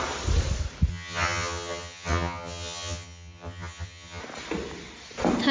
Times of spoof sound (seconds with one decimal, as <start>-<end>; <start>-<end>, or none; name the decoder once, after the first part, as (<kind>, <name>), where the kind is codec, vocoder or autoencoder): 0.9-4.2 (vocoder, HiFi-GAN)